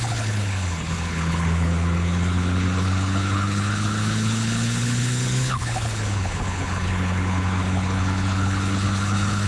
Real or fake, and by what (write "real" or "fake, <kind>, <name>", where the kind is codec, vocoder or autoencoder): fake, codec, HILCodec